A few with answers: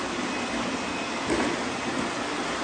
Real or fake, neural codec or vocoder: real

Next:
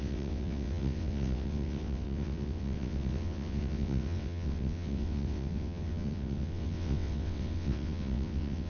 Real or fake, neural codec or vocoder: fake, vocoder, WaveNeXt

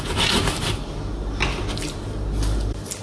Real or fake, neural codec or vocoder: real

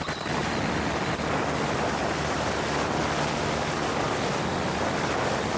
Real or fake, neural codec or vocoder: real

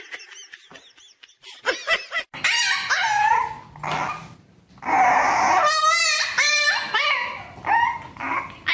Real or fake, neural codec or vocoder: real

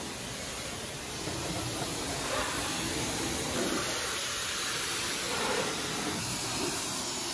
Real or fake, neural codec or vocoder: real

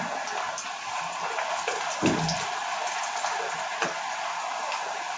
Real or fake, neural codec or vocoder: real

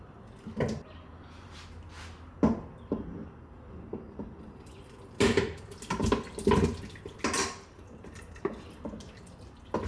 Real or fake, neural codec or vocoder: real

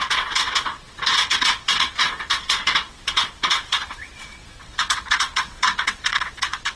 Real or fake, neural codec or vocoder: fake, vocoder, WaveNeXt